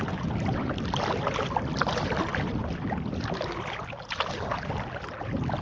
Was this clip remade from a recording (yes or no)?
no